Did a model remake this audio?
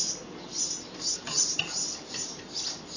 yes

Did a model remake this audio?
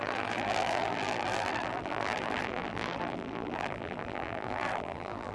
yes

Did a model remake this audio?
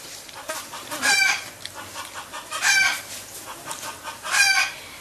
yes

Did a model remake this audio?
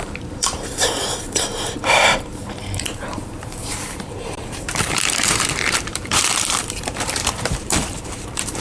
yes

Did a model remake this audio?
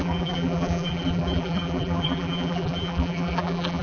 yes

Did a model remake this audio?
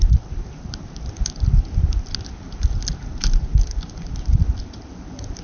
no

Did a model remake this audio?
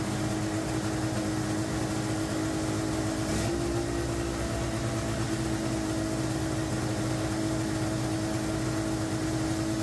no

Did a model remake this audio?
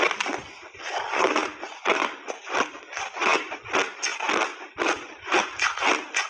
no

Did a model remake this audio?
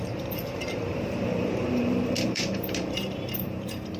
yes